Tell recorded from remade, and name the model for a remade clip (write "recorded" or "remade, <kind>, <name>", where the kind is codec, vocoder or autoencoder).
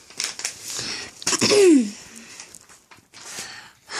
recorded